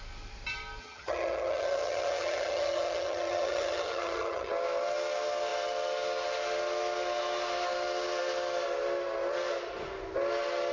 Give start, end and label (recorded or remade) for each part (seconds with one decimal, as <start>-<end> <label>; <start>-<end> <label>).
0.0-0.8 recorded; 0.8-4.5 remade; 4.5-10.7 recorded

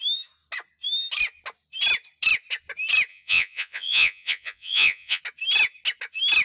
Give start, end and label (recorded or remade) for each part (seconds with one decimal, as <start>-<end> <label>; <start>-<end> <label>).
0.0-3.1 recorded; 3.1-5.2 remade; 5.2-6.4 recorded

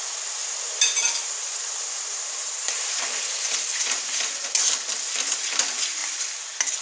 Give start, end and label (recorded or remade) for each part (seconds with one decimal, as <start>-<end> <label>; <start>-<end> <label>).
0.0-0.4 recorded; 0.4-4.5 remade; 4.5-6.8 recorded